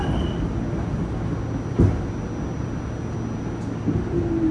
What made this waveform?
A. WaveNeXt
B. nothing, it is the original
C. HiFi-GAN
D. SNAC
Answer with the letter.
B